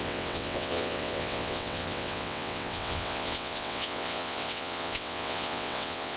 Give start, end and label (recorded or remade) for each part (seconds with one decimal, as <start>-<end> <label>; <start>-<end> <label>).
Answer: 0.0-6.2 remade